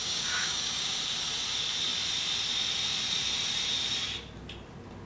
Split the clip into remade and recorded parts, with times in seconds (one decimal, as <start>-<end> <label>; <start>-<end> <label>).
0.0-0.9 remade; 0.9-5.1 recorded